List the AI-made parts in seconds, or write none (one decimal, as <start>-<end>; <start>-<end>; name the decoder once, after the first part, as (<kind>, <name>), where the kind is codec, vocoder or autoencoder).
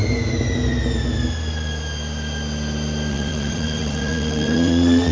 3.1-5.1 (vocoder, WaveNeXt)